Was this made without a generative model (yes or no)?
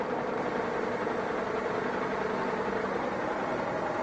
yes